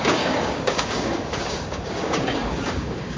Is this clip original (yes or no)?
no